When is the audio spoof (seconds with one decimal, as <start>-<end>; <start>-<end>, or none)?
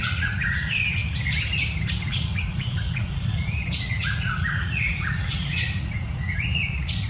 0.0-1.0; 2.0-7.1